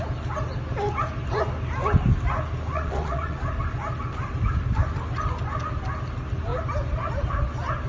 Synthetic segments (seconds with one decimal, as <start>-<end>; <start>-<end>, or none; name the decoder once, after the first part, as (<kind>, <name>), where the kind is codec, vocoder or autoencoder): 2.7-3.4 (vocoder, Vocos)